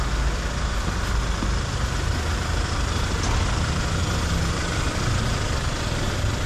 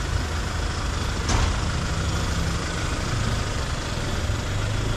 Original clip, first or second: second